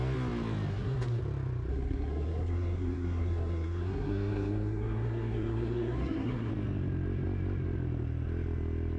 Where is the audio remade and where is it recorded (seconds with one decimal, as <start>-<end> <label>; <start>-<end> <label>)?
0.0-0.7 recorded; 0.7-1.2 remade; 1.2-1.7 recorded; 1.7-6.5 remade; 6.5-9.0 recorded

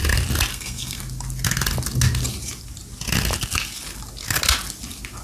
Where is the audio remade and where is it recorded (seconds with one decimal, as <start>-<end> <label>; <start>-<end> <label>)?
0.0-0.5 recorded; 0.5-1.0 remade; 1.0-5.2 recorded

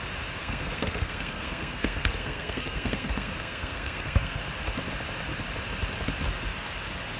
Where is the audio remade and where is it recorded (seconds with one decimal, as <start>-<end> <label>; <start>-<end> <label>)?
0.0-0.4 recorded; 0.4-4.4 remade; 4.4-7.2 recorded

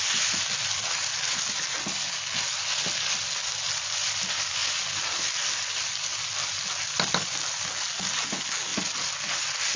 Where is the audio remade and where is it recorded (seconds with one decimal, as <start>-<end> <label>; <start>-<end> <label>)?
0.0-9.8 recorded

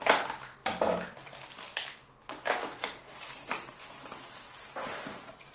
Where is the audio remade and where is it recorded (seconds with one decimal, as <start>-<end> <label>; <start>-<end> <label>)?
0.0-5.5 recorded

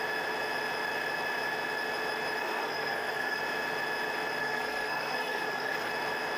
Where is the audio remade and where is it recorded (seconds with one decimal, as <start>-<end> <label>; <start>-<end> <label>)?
0.0-2.4 recorded; 2.4-3.4 remade; 3.4-4.4 recorded; 4.4-5.9 remade; 5.9-6.4 recorded